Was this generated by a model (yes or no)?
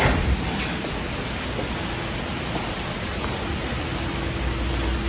no